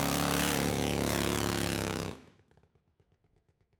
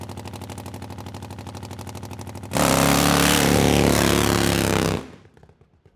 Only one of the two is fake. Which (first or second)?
first